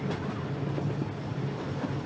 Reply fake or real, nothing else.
real